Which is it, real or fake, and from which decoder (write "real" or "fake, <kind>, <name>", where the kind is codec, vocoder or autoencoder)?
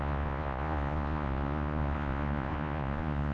fake, vocoder, Vocos